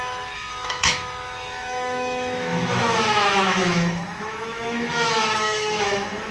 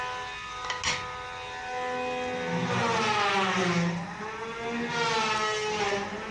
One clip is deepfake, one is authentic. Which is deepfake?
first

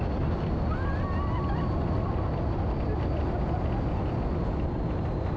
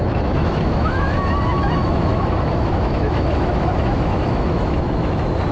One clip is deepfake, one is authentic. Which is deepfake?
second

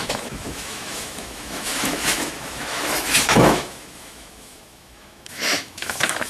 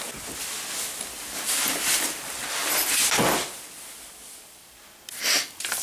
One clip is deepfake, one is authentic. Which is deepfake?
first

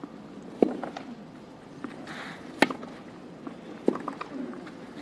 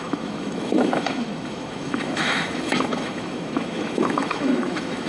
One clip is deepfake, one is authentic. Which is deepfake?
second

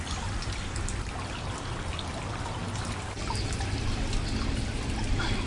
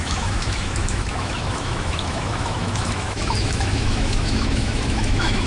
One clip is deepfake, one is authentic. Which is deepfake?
second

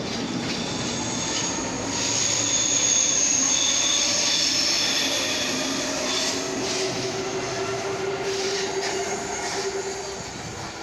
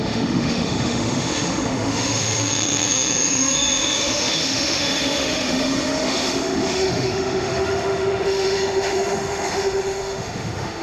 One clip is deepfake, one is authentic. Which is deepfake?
second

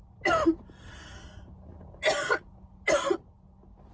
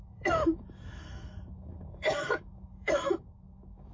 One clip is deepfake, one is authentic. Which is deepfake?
second